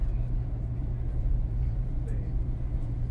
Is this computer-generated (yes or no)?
yes